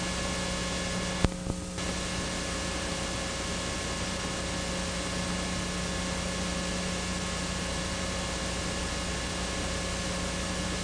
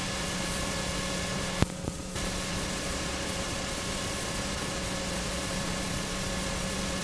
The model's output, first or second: second